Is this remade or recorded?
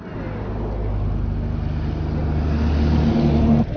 recorded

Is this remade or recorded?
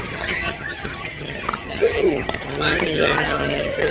remade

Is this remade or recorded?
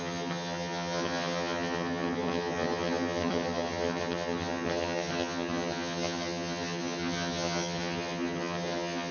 remade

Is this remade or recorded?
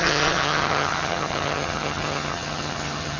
remade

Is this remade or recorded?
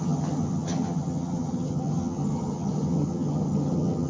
remade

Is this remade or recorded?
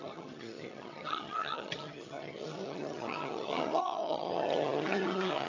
remade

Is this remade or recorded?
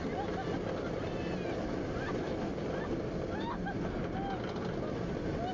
recorded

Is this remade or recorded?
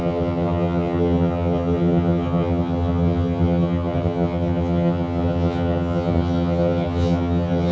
remade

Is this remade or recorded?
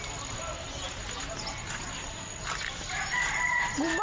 recorded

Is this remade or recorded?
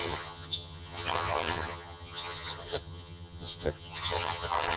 remade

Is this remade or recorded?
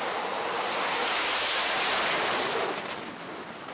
recorded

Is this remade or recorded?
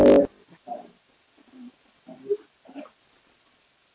recorded